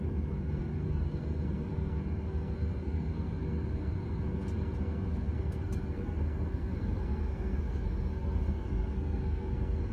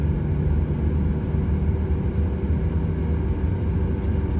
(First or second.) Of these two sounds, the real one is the second